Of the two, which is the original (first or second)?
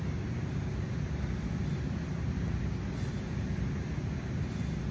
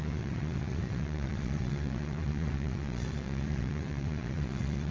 first